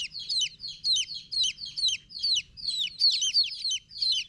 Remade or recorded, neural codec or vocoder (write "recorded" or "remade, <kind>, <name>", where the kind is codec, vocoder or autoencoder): recorded